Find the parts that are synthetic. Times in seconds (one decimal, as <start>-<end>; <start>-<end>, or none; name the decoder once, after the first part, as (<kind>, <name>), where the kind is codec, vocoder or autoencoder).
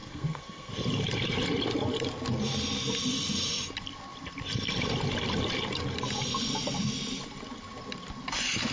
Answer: 0.0-0.7 (codec, SNAC)